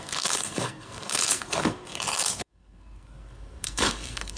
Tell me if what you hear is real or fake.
fake